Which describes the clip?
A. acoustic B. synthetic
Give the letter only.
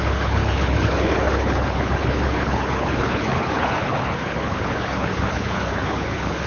B